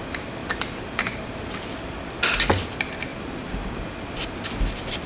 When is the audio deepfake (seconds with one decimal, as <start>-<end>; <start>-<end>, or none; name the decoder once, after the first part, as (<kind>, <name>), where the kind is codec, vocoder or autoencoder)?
0.4-1.2 (vocoder, BigVGAN v2); 3.1-3.7